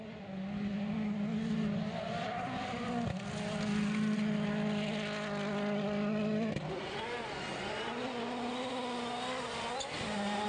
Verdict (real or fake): real